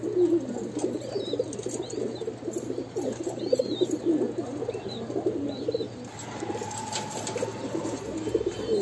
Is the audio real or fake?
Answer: real